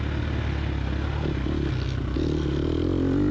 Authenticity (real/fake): real